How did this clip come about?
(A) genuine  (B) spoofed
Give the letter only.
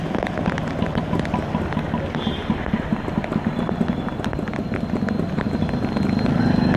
A